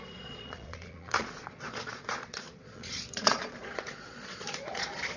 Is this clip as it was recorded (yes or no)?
no